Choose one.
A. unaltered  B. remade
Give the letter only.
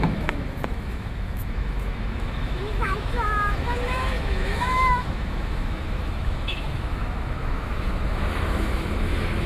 B